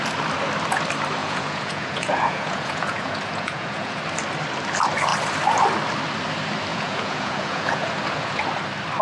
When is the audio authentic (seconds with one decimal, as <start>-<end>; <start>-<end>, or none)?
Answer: 0.0-1.2; 4.0-6.7; 8.4-9.0